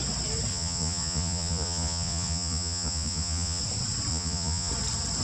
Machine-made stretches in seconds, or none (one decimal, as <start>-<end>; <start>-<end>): 0.5-3.6; 4.1-4.7